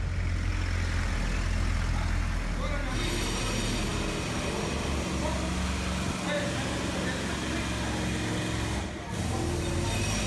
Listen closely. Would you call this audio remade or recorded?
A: recorded